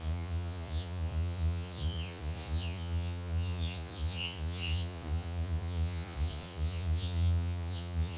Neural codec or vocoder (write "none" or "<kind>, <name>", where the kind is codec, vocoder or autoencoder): vocoder, Vocos